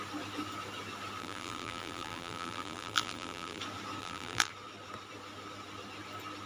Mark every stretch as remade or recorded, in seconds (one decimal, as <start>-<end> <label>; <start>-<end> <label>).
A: 0.0-1.2 recorded; 1.2-3.6 remade; 3.6-4.0 recorded; 4.0-4.5 remade; 4.5-6.5 recorded